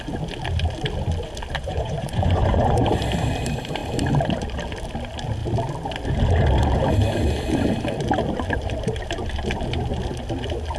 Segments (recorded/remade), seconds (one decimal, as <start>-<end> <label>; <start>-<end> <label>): 0.0-1.6 recorded; 1.6-3.0 remade; 3.0-10.8 recorded